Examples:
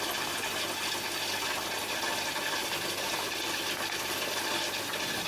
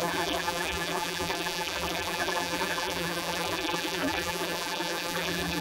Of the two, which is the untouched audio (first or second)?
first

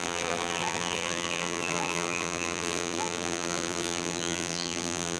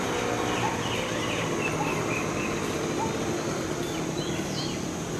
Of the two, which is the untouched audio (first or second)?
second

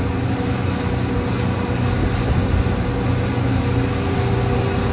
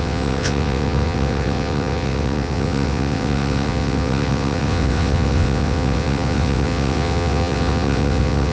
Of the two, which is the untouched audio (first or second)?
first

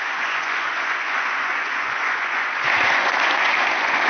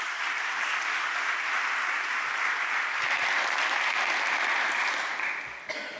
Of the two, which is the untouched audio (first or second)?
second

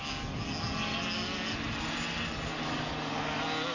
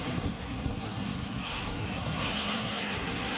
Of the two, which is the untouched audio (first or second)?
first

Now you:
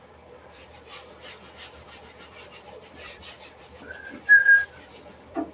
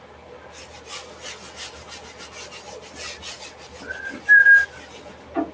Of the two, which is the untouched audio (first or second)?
second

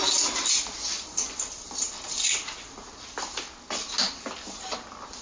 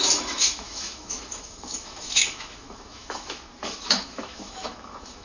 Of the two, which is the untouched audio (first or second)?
first